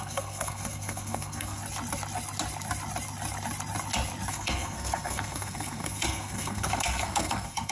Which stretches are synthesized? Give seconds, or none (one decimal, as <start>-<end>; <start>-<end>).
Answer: 0.0-1.6; 4.3-7.7